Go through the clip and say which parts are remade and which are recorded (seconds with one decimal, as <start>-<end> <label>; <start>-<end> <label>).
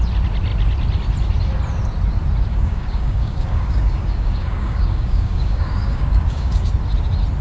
0.0-2.5 recorded; 2.5-6.7 remade; 6.7-7.4 recorded